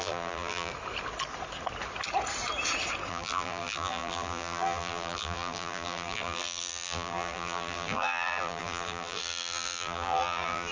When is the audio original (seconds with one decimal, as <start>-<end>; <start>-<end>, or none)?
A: 0.7-3.1